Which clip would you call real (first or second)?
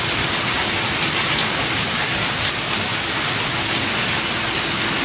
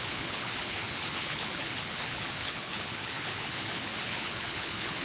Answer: first